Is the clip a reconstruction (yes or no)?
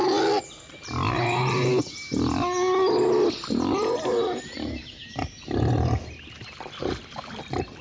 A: no